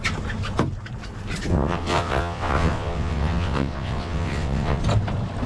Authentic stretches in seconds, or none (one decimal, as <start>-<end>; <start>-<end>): 0.0-1.5; 4.8-5.5